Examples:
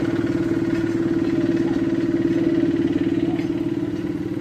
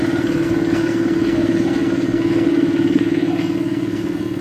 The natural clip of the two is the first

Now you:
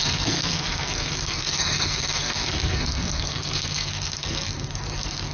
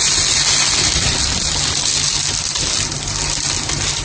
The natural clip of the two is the second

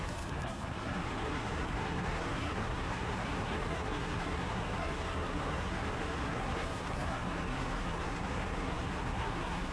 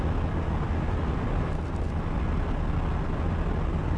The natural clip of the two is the second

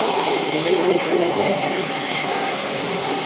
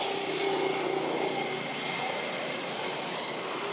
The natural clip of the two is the second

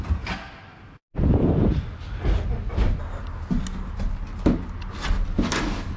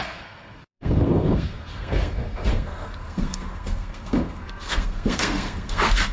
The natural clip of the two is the first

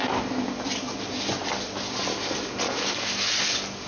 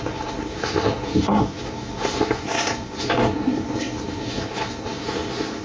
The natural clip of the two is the first